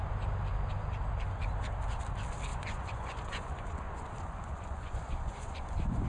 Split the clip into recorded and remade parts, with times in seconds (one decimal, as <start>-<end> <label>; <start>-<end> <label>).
0.0-2.5 recorded; 2.5-6.1 remade